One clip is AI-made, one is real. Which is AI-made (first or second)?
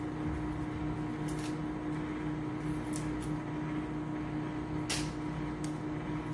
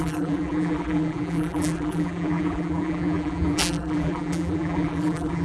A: second